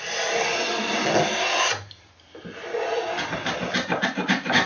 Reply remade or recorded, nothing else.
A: recorded